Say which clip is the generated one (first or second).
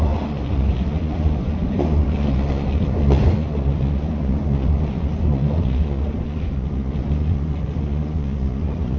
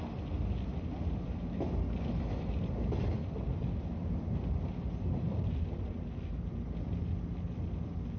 first